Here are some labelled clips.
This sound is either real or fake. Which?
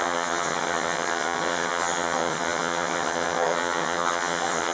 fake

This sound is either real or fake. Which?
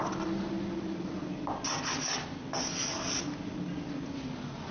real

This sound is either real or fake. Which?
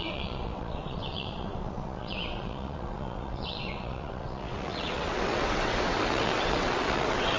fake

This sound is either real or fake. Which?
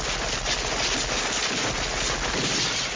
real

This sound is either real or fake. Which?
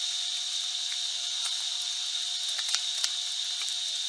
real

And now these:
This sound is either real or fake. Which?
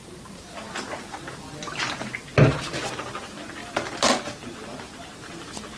real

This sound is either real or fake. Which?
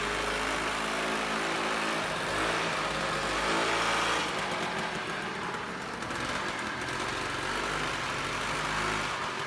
real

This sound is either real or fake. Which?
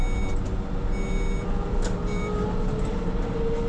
real